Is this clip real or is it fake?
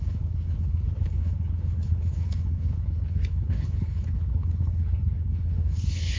fake